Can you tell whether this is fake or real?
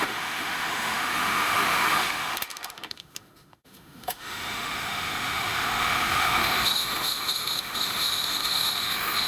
fake